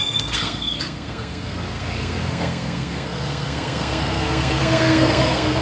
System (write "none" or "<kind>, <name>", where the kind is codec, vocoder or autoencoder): codec, SNAC